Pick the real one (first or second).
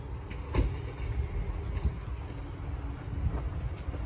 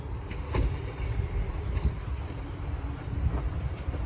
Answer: first